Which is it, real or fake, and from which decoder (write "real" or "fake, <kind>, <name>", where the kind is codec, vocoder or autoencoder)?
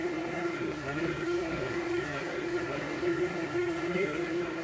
fake, codec, SNAC